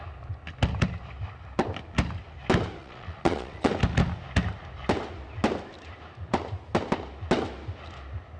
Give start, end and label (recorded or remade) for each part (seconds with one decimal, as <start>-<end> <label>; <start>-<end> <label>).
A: 0.0-2.8 recorded; 2.8-3.7 remade; 3.7-8.4 recorded